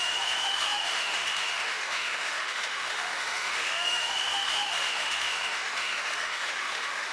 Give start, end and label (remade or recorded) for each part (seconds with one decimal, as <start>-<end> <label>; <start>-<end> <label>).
0.0-7.1 remade